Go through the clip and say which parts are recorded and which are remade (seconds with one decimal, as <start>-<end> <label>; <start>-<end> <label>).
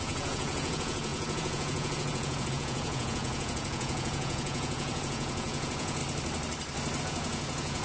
0.0-6.0 remade; 6.0-7.0 recorded; 7.0-7.8 remade